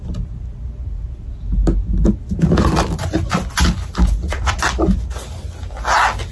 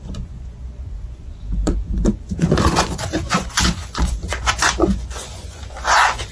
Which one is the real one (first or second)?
first